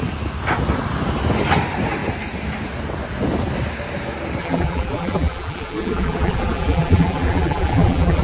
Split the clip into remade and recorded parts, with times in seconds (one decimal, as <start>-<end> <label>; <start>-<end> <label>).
0.0-4.4 recorded; 4.4-8.2 remade